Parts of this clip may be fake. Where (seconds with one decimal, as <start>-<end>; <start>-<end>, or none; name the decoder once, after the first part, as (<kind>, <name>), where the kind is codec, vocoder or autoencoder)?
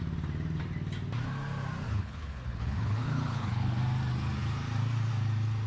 1.9-3.8 (codec, HILCodec)